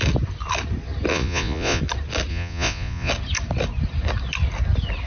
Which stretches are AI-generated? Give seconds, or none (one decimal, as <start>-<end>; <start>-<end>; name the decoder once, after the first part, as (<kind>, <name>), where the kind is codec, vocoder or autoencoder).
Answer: 1.1-1.8 (vocoder, Vocos); 2.3-3.1